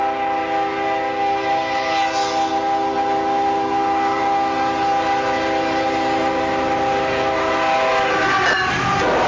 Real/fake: real